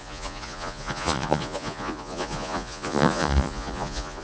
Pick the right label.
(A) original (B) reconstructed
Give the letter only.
B